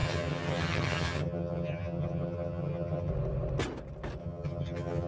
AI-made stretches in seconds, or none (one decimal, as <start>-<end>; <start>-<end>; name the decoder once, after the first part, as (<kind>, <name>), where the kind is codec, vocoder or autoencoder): 0.0-3.1 (vocoder, HiFi-GAN); 4.2-5.1